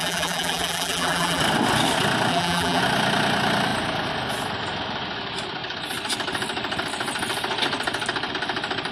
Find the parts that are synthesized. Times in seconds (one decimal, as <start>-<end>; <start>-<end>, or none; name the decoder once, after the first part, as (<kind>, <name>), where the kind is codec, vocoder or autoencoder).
0.0-1.4 (vocoder, BigVGAN v2); 2.3-2.8